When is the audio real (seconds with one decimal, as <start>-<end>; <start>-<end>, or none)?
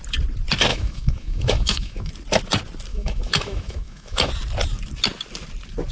0.0-0.7; 2.1-2.9; 4.3-5.9